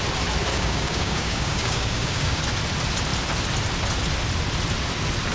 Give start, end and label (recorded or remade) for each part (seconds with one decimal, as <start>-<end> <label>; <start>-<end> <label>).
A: 0.0-0.5 recorded; 0.5-2.4 remade; 2.4-5.3 recorded